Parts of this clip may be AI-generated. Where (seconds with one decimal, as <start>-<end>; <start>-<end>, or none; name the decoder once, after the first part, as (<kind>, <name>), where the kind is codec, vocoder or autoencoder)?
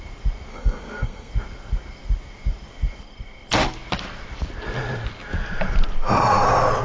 0.5-1.3 (codec, SNAC)